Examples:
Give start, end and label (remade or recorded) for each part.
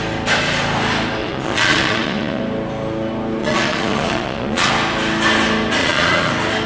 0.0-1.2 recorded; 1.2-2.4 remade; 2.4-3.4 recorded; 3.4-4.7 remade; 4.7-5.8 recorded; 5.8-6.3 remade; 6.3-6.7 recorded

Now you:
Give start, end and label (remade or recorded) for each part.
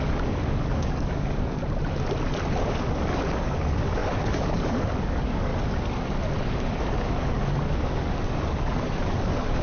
0.0-1.6 remade; 1.6-2.6 recorded; 2.6-5.5 remade; 5.5-6.4 recorded; 6.4-9.6 remade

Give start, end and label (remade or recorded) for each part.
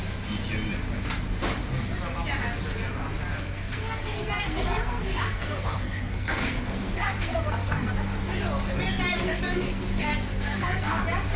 0.0-3.3 recorded; 3.3-7.9 remade; 7.9-9.1 recorded; 9.1-11.0 remade; 11.0-11.4 recorded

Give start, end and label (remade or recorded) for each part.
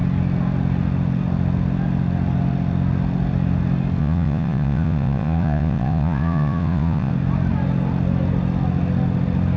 0.0-4.0 recorded; 4.0-7.1 remade; 7.1-9.6 recorded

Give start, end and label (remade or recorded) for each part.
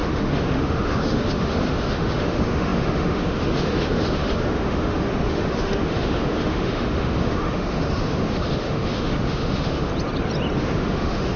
0.0-9.9 remade; 9.9-10.6 recorded; 10.6-11.4 remade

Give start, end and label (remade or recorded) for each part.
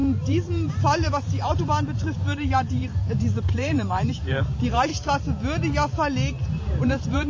0.0-4.9 remade; 4.9-6.6 recorded; 6.6-7.3 remade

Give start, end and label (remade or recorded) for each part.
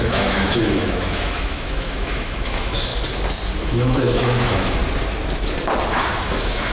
0.0-2.9 remade; 2.9-3.6 recorded; 3.6-4.8 remade; 4.8-5.9 recorded; 5.9-6.7 remade